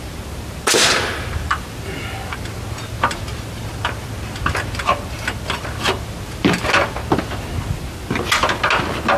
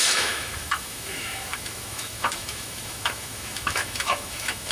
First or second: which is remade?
second